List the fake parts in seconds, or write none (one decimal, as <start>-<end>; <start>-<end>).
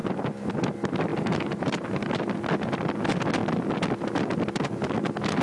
1.1-2.1